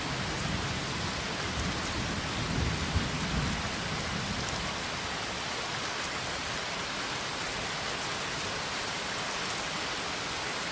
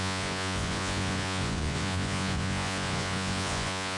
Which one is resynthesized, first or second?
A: second